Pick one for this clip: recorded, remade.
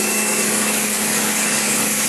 remade